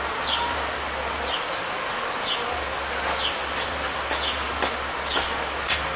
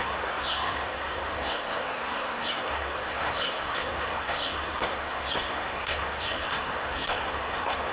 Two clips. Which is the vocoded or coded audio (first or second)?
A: second